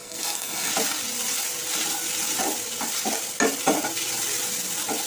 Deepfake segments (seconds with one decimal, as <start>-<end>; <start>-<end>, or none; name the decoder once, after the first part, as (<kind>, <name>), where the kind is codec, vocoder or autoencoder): 0.0-0.7 (codec, SNAC)